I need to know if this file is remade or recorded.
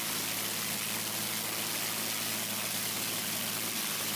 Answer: recorded